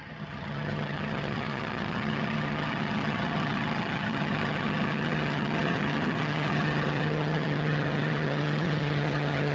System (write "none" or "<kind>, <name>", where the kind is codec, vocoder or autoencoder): vocoder, HiFi-GAN